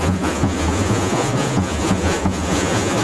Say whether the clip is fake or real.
fake